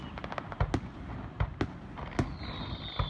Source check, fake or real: real